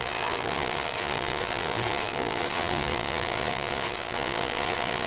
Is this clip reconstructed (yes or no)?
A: yes